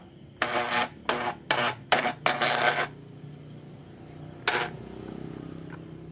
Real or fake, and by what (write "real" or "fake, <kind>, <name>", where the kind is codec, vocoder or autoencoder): real